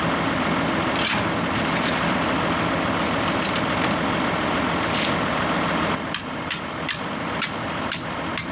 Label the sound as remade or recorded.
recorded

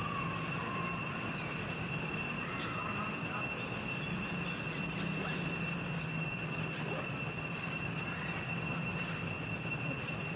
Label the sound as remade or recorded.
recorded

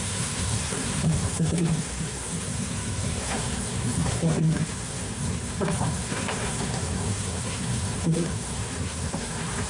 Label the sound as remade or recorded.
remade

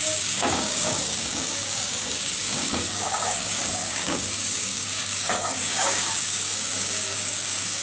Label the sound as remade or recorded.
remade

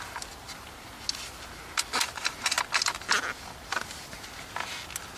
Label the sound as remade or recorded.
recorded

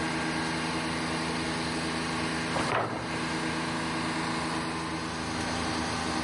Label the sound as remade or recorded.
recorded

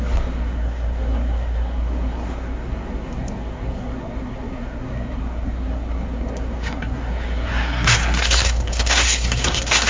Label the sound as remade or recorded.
remade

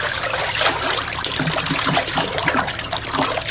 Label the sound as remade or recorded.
recorded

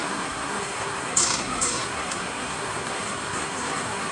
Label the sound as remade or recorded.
remade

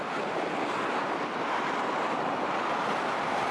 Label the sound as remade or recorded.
recorded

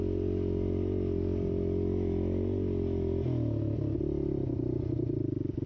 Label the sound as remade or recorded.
recorded